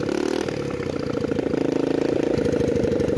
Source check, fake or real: real